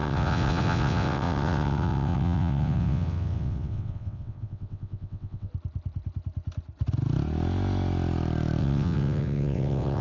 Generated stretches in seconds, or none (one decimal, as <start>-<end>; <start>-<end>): 0.0-5.5; 8.6-10.0